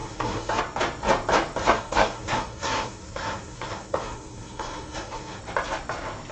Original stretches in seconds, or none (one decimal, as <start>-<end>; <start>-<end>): 0.6-1.6; 5.4-6.3